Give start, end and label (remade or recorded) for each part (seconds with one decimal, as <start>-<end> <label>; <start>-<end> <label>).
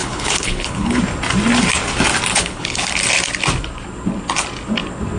0.0-1.0 remade; 1.0-2.3 recorded; 2.3-2.9 remade; 2.9-5.2 recorded